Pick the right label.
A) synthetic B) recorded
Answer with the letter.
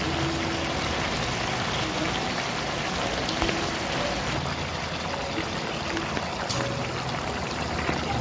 B